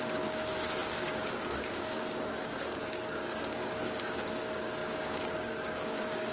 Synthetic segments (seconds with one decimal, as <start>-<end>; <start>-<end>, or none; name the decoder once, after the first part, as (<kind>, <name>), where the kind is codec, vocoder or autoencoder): 0.0-6.3 (codec, DAC)